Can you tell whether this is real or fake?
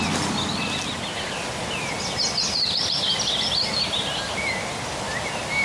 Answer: real